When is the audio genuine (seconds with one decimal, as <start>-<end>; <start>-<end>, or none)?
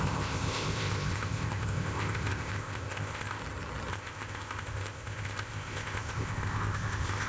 3.4-3.9